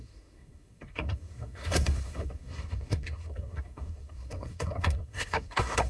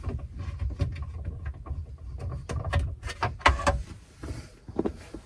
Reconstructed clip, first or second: first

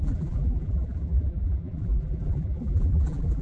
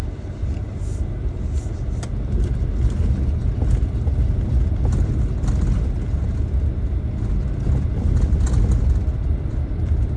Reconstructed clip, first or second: first